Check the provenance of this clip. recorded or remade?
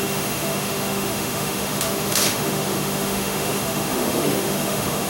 remade